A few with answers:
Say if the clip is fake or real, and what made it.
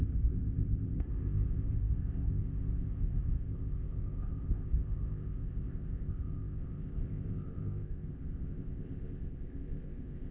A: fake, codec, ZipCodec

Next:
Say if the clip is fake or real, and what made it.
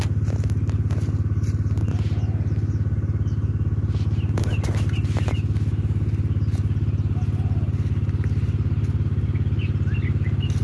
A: real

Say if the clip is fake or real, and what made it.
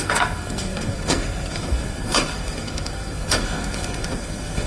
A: fake, codec, SNAC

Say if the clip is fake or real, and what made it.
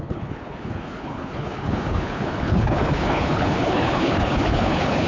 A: fake, codec, HILCodec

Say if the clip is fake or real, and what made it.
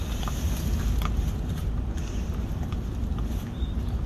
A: fake, vocoder, BigVGAN v2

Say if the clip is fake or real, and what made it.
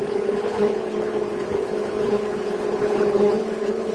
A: fake, codec, HILCodec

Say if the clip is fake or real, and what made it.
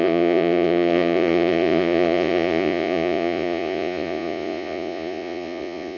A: fake, vocoder, Vocos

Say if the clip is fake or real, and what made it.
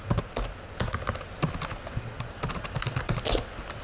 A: real